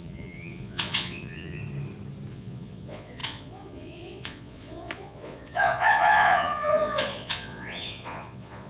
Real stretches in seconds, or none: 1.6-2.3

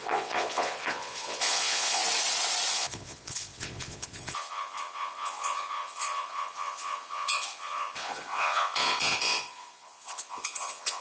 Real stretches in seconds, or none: 2.0-2.7

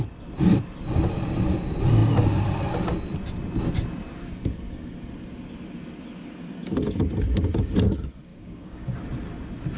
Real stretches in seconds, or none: 0.0-8.3; 9.0-9.8

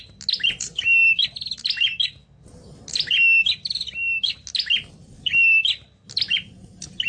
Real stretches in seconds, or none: 0.0-7.1

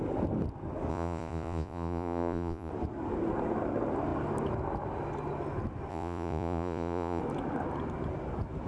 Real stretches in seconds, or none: 0.0-0.9; 2.7-5.9; 7.2-8.7

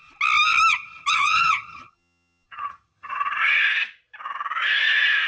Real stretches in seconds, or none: 0.0-0.7; 3.6-5.3

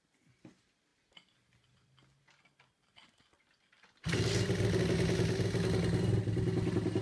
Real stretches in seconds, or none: 0.0-7.0